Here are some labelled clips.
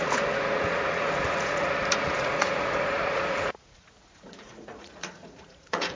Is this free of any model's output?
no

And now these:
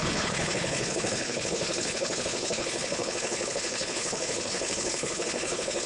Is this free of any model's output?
no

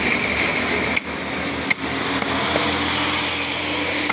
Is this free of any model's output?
yes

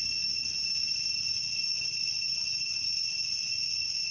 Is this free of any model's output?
yes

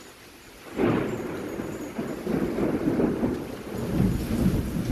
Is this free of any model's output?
no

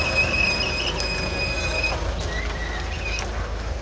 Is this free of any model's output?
yes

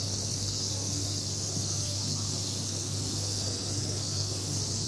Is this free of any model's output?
no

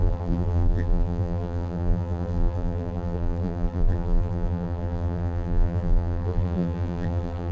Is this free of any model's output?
no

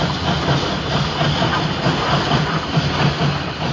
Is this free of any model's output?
yes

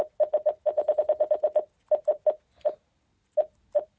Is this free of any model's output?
yes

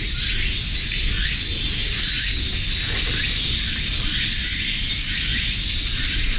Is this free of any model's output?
yes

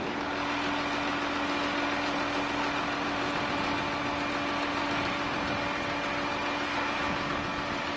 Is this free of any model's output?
yes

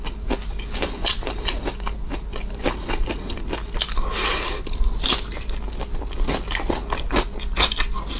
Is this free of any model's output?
yes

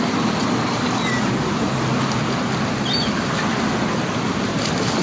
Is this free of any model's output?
yes